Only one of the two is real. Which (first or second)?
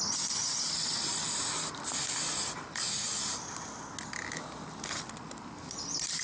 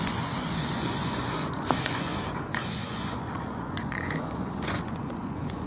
first